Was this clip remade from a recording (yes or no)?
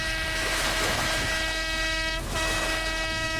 yes